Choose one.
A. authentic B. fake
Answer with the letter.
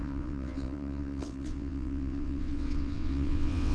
B